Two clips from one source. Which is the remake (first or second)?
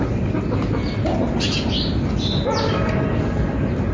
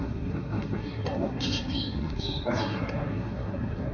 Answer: second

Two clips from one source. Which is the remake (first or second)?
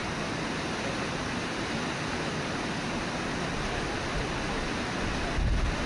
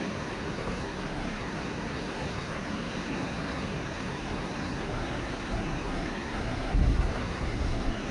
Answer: second